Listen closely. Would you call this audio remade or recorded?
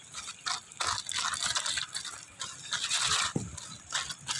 recorded